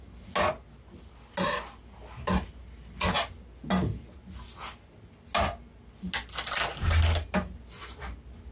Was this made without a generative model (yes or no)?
yes